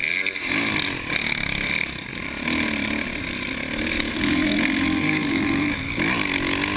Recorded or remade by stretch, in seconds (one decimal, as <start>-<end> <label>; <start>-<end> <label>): 0.0-4.1 recorded; 4.1-5.7 remade; 5.7-6.8 recorded